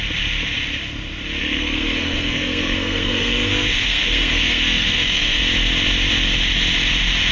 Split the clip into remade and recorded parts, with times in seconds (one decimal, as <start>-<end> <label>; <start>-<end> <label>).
0.0-1.4 recorded; 1.4-5.4 remade; 5.4-7.3 recorded